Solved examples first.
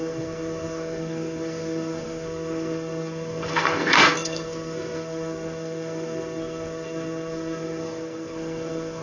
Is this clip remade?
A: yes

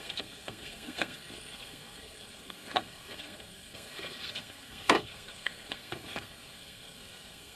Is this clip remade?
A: yes